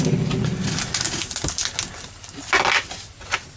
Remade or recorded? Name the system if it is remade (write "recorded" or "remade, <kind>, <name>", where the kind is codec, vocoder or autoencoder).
recorded